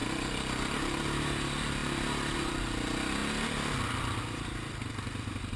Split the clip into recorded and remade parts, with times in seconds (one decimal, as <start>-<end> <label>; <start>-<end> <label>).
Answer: 0.0-5.6 recorded